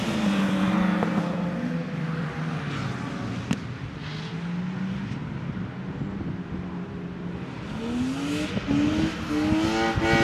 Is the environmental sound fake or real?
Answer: real